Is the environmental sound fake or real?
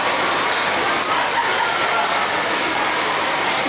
real